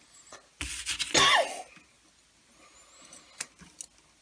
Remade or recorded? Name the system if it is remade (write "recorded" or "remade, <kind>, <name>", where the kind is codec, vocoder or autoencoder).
recorded